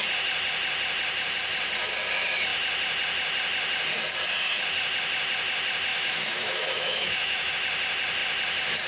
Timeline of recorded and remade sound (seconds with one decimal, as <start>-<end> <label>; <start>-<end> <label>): 0.0-5.9 recorded; 5.9-7.5 remade; 7.5-8.9 recorded